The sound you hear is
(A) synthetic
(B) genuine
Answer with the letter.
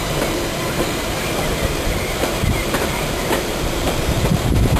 A